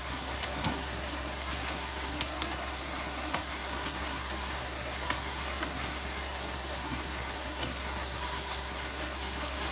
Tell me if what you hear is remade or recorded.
remade